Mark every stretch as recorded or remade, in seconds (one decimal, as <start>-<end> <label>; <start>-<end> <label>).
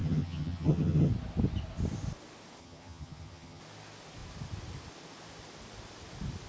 0.0-1.1 remade; 1.1-2.6 recorded; 2.6-3.6 remade; 3.6-6.5 recorded